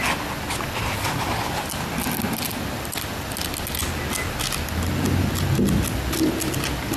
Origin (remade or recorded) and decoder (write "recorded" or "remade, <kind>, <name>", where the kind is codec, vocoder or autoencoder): recorded